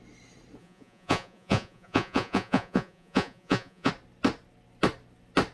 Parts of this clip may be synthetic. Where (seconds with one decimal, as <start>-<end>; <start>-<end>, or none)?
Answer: 0.6-3.9